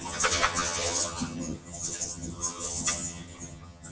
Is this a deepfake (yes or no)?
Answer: yes